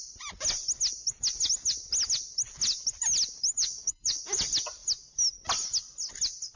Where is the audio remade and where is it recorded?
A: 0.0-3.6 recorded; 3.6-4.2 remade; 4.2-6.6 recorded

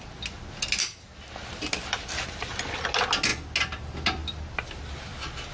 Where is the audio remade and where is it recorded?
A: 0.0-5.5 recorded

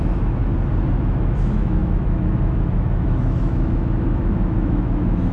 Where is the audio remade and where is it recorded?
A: 0.0-0.4 remade; 0.4-0.9 recorded; 0.9-5.3 remade

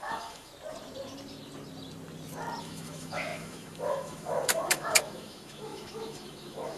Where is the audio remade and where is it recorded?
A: 0.0-0.5 remade; 0.5-2.6 recorded; 2.6-6.8 remade

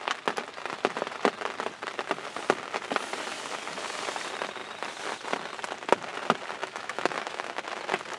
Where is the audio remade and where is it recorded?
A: 0.0-6.6 recorded; 6.6-7.6 remade; 7.6-8.2 recorded

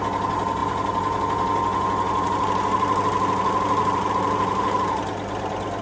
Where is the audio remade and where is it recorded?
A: 0.0-5.8 recorded

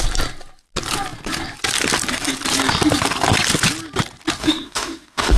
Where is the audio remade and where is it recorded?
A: 0.0-4.4 recorded; 4.4-5.4 remade

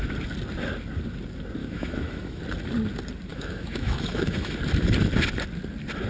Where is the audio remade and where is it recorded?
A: 0.0-1.6 recorded; 1.6-2.4 remade; 2.4-3.3 recorded; 3.3-4.6 remade; 4.6-6.1 recorded